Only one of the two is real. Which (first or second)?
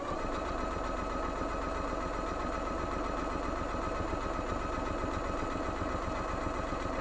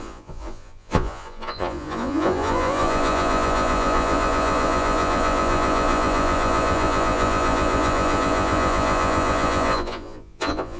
first